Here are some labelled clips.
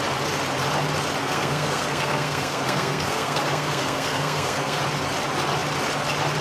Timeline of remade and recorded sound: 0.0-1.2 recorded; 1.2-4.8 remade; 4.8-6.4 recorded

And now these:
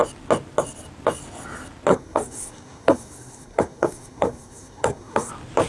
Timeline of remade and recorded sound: 0.0-1.9 recorded; 1.9-5.3 remade; 5.3-5.7 recorded

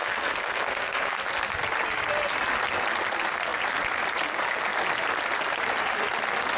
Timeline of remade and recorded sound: 0.0-1.2 remade; 1.2-6.6 recorded